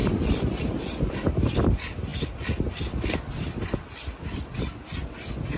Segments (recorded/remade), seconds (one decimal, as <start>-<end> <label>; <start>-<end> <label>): 0.0-5.6 recorded

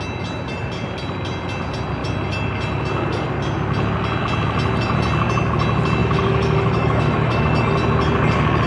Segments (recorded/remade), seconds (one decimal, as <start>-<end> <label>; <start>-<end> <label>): 0.0-6.0 recorded; 6.0-7.6 remade; 7.6-8.7 recorded

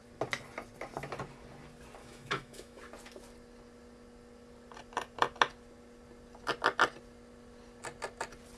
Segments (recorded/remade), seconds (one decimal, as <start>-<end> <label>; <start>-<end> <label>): 0.0-2.0 recorded; 2.0-2.8 remade; 2.8-8.6 recorded

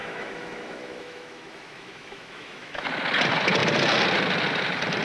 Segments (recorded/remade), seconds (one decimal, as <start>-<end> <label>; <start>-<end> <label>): 0.0-2.9 remade; 2.9-5.0 recorded